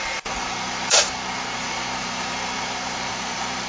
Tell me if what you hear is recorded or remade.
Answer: remade